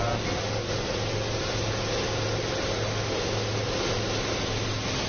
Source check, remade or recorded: recorded